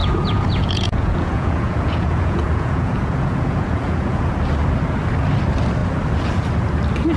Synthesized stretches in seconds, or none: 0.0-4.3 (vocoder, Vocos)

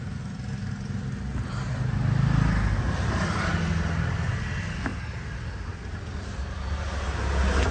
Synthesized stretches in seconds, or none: none

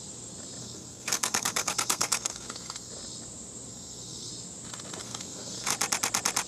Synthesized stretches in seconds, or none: 0.6-2.9 (codec, SNAC); 3.7-4.3; 5.0-5.7

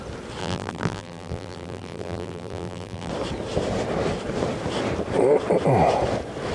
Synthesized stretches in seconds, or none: 0.4-3.1 (vocoder, BigVGAN v2)

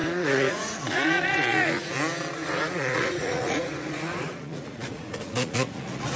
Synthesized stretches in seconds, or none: 0.0-1.9 (vocoder, Vocos); 2.4-6.2